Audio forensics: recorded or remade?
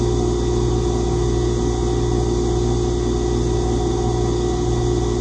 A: recorded